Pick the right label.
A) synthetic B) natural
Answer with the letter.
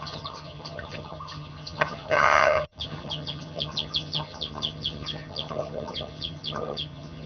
A